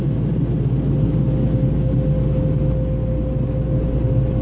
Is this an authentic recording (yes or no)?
yes